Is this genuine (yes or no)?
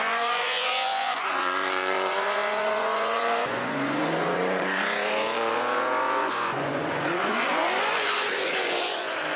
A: no